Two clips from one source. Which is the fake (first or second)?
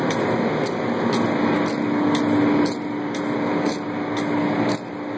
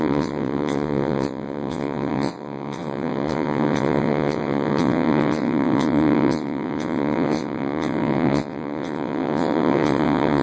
second